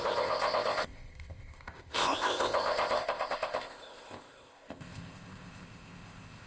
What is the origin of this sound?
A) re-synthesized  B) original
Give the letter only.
A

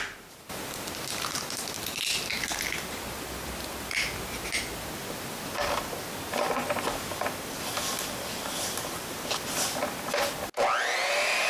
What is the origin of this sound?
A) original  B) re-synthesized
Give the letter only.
A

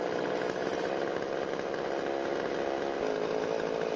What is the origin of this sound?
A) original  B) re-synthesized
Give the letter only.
A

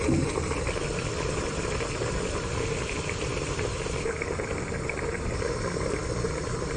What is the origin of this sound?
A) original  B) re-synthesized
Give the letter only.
A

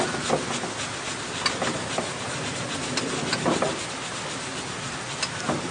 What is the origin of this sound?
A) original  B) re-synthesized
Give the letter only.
A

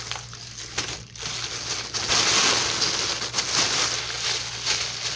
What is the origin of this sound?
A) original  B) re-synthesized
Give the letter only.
A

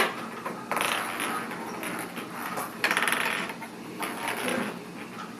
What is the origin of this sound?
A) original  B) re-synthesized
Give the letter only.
A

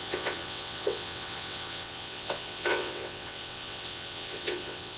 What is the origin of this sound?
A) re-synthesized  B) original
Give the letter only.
A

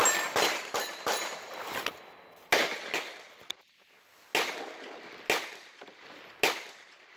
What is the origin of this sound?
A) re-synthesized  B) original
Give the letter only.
B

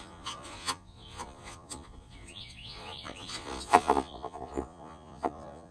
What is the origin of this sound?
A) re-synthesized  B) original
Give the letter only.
A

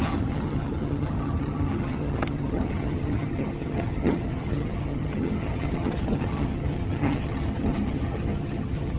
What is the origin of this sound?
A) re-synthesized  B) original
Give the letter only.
A